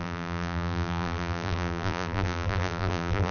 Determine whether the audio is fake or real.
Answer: fake